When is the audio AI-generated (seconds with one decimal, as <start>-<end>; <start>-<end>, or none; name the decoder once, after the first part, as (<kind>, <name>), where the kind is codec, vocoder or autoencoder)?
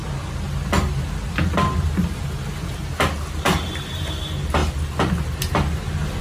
none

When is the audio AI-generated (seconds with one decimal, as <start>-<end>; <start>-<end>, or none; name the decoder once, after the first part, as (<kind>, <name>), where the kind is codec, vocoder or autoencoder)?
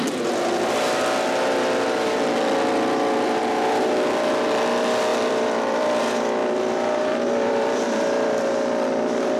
5.1-6.0 (vocoder, BigVGAN v2); 6.4-8.4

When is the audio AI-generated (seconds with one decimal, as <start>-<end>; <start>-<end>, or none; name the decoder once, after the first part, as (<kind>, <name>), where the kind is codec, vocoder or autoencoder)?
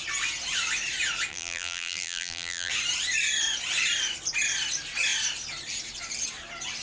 1.3-2.7 (vocoder, BigVGAN v2)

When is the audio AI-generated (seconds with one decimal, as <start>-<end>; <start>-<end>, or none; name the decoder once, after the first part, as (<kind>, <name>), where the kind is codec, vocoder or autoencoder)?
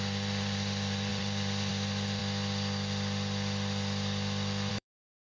0.0-2.2 (vocoder, BigVGAN v2); 4.7-5.3